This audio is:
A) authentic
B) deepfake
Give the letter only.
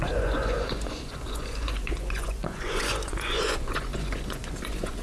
B